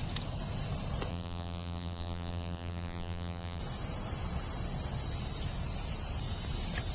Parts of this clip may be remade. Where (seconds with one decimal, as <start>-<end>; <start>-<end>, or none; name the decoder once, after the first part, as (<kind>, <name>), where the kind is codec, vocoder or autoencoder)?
1.1-3.6 (vocoder, BigVGAN v2)